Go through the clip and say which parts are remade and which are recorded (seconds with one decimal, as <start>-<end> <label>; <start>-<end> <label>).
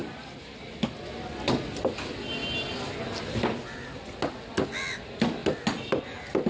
0.0-0.5 remade; 0.5-6.5 recorded